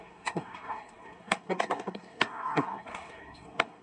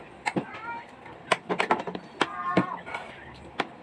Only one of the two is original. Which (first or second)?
second